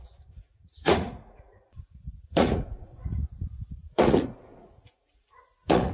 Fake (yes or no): yes